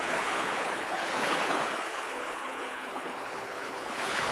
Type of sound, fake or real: fake